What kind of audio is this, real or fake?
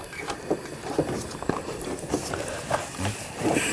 real